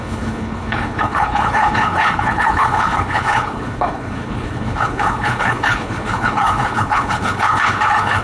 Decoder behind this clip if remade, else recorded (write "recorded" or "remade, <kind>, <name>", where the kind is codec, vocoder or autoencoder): remade, codec, HILCodec